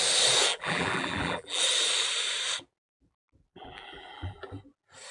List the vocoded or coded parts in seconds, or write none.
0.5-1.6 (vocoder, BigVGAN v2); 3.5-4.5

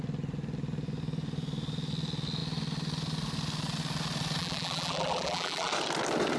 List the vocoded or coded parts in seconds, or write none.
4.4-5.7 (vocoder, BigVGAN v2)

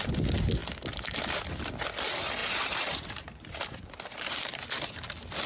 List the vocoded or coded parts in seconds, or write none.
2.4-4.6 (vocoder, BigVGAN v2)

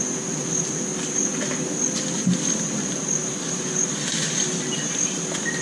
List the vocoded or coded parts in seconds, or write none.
none